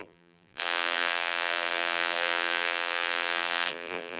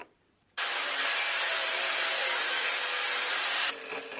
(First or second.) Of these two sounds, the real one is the second